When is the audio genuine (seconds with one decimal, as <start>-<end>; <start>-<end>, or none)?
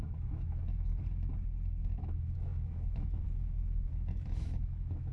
0.9-1.8